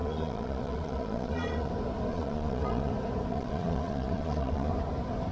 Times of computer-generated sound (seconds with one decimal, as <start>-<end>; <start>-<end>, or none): 0.0-1.7; 2.1-2.9; 3.3-4.7